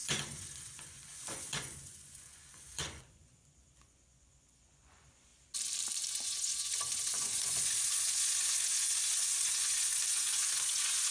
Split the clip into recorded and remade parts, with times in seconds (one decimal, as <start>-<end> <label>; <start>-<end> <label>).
0.0-5.3 remade; 5.3-6.1 recorded; 6.1-11.1 remade